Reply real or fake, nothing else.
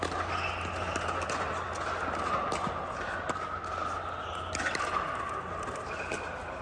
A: real